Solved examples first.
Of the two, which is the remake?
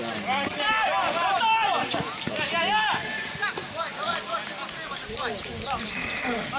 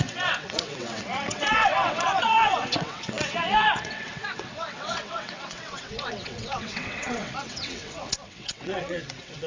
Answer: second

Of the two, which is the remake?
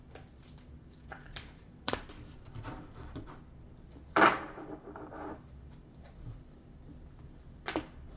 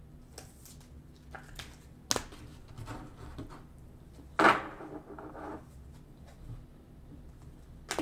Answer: first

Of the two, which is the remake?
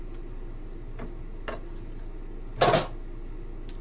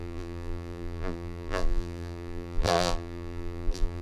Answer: second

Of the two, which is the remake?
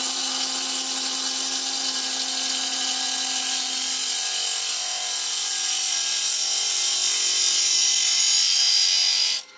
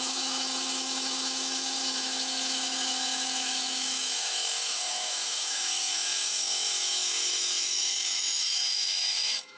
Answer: second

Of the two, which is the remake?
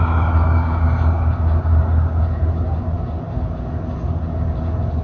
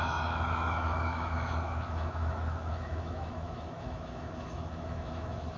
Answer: second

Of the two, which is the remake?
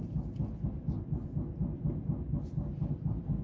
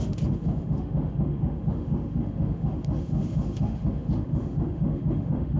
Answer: second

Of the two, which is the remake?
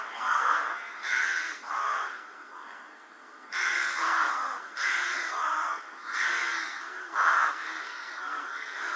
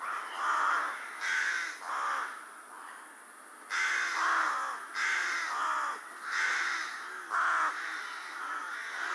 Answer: first